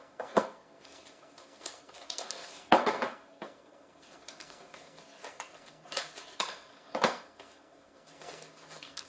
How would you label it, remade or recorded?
remade